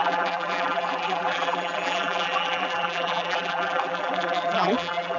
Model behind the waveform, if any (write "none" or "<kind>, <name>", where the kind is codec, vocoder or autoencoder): vocoder, BigVGAN v2